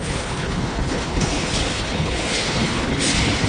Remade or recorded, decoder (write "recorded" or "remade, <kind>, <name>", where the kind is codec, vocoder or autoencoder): remade, codec, HILCodec